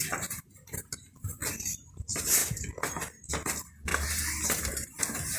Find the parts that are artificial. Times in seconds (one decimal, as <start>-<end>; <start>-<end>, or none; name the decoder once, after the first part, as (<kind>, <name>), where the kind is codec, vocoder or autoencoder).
3.9-5.0 (vocoder, BigVGAN v2)